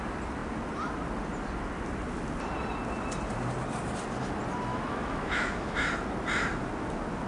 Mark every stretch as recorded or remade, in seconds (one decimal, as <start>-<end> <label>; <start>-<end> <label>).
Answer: 0.0-4.7 recorded; 4.7-5.8 remade; 5.8-7.3 recorded